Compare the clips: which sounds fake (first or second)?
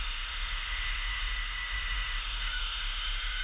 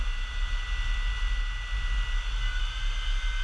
first